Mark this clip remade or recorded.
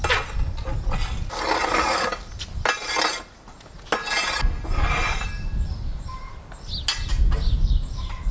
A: recorded